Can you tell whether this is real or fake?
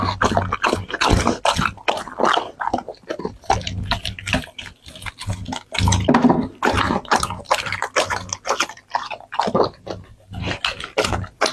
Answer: real